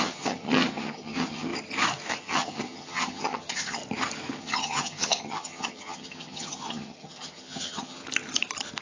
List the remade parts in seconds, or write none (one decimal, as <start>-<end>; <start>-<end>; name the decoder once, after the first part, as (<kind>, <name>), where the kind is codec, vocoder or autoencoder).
0.0-1.5 (vocoder, HiFi-GAN); 2.2-3.8; 4.4-8.0